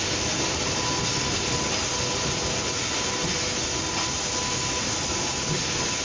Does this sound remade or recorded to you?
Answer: recorded